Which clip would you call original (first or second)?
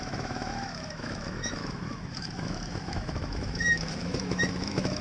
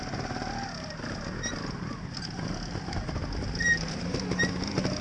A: second